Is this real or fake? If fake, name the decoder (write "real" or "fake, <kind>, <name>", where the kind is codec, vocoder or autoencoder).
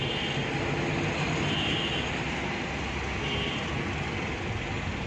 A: real